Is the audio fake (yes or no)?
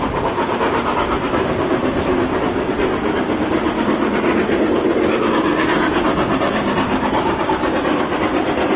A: no